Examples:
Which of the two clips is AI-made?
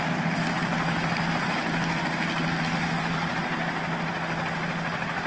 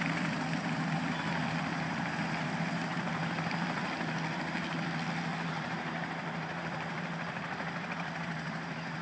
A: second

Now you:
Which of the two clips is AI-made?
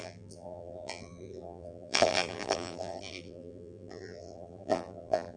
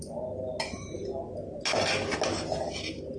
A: first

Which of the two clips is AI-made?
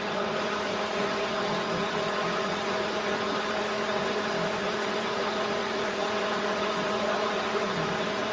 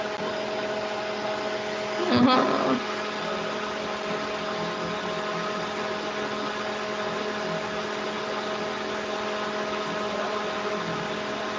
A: first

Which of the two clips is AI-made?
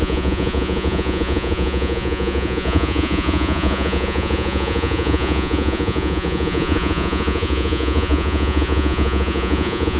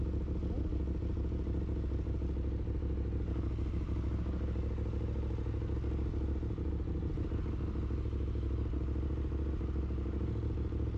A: first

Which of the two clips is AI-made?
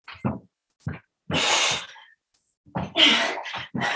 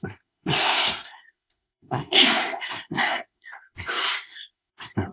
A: second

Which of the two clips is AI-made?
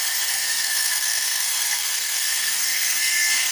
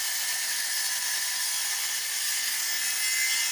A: first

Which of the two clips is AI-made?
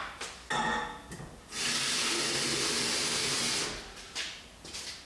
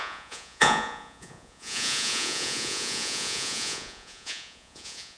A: second